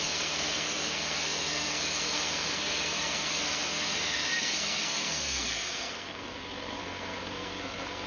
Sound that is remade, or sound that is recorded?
remade